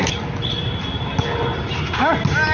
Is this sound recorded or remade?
recorded